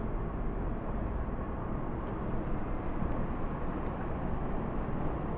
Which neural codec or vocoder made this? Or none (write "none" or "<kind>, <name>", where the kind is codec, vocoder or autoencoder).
none